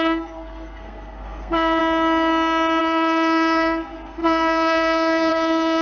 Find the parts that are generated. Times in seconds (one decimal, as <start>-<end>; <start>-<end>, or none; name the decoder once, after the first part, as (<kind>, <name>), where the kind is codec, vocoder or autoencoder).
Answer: 0.0-1.8 (codec, SNAC); 2.8-5.8